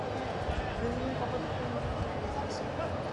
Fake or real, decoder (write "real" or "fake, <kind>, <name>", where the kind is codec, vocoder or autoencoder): real